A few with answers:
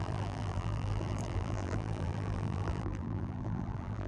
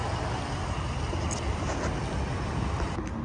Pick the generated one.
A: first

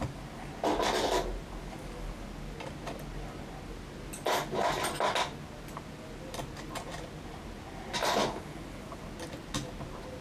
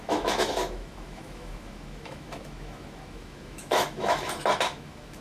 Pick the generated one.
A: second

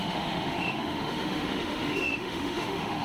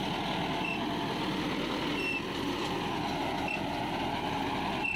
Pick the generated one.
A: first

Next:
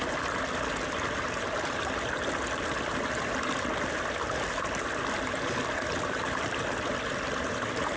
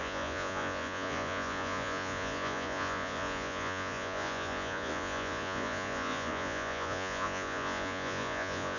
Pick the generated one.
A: second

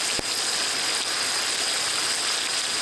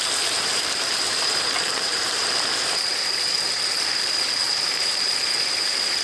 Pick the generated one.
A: second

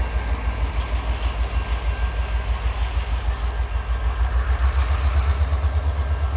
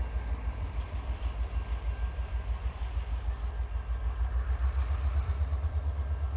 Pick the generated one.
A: second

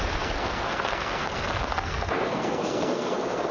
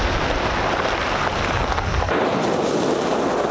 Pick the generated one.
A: first